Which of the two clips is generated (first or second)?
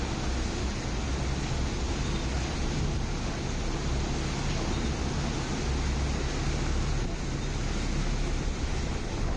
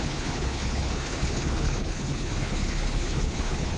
second